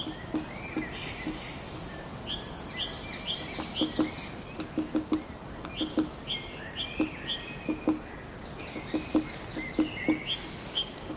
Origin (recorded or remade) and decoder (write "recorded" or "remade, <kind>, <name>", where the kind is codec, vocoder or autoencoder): recorded